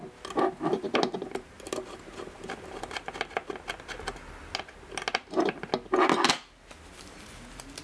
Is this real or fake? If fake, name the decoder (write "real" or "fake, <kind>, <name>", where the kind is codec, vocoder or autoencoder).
real